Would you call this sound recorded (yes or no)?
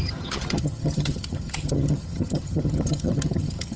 no